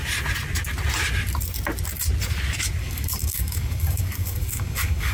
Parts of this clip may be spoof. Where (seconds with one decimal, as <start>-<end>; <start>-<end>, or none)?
2.8-5.1